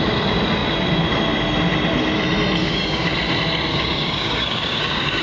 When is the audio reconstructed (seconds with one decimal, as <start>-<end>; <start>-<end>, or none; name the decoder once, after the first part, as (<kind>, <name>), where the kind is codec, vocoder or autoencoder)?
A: 2.6-3.1 (codec, DAC); 3.7-5.2